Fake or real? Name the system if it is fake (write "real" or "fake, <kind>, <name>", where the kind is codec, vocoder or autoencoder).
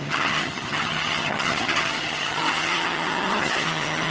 fake, vocoder, HiFi-GAN